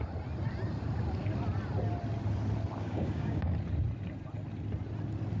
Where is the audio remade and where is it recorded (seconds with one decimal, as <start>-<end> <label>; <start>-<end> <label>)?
0.0-2.8 recorded; 2.8-3.5 remade; 3.5-5.4 recorded